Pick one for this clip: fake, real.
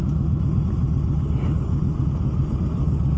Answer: real